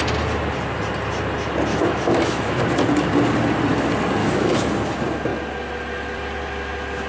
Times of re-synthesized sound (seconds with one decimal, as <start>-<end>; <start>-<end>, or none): 1.7-2.6; 4.2-4.7